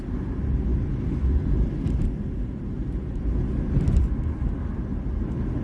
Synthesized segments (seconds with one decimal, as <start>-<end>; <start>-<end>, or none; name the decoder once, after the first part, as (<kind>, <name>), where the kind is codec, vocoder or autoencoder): none